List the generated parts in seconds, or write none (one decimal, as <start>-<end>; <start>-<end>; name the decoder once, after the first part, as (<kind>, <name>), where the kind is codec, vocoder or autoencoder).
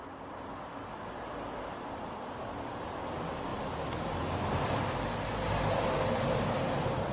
none